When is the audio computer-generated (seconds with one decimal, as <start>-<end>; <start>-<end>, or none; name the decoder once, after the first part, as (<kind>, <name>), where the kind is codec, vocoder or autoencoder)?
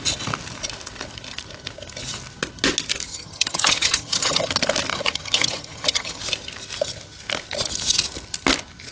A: 3.1-4.5 (vocoder, HiFi-GAN); 4.9-6.2